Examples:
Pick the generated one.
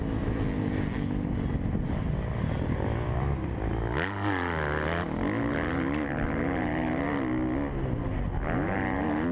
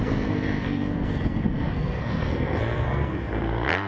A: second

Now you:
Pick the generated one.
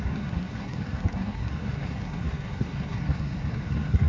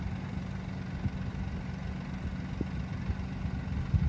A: first